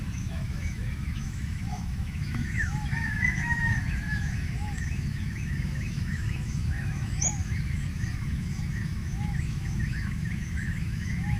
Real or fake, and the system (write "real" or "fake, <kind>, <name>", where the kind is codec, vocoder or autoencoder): fake, autoencoder, DAC-VAE